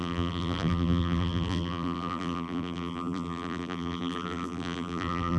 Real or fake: fake